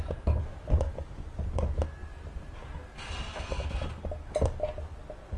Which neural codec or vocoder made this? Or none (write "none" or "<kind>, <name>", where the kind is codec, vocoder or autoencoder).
none